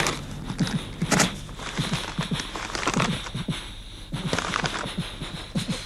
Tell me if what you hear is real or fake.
real